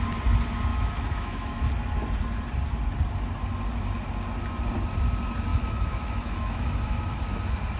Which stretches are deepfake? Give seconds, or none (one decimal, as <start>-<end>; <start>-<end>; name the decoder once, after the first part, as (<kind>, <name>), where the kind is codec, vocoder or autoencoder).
0.7-1.6 (autoencoder, DAC-VAE); 5.5-7.2